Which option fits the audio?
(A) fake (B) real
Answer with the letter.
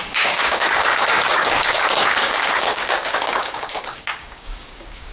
A